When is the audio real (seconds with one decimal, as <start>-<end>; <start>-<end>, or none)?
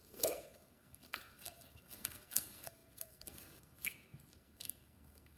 none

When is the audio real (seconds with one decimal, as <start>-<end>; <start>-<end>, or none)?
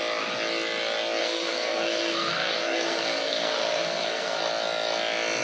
0.0-1.2; 4.4-5.4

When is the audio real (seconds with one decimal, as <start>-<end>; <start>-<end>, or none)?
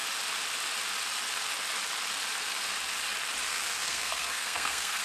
0.0-3.5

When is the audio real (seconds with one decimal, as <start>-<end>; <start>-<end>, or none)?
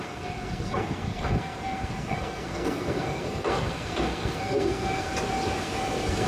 5.1-5.6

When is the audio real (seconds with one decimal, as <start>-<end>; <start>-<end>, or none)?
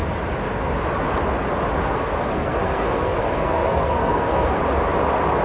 0.0-1.8; 4.6-5.4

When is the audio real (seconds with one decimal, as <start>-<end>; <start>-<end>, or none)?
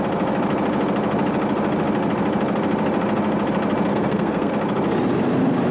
0.0-3.9; 4.5-5.7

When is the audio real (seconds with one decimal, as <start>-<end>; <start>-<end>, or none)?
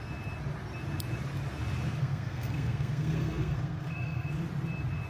0.0-2.0; 4.3-5.1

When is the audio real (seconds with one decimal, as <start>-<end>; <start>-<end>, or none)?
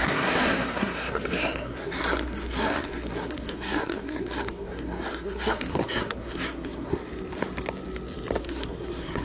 7.0-8.4